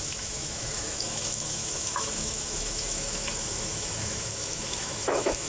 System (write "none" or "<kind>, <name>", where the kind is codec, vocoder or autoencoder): autoencoder, DAC-VAE